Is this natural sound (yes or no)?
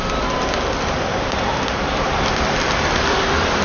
no